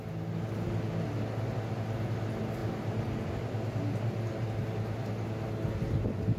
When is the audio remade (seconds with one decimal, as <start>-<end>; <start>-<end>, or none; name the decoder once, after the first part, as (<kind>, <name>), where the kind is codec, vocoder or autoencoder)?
2.6-3.4 (vocoder, BigVGAN v2)